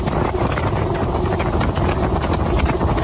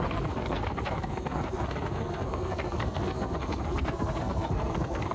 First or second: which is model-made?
second